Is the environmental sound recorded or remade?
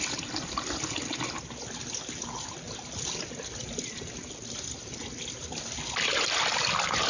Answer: recorded